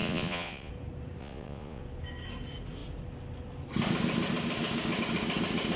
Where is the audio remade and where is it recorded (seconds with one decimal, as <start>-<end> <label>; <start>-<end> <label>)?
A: 0.0-0.7 remade; 0.7-1.2 recorded; 1.2-1.8 remade; 1.8-5.8 recorded